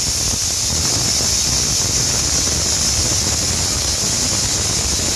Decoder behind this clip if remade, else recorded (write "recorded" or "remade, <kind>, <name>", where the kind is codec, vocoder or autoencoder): recorded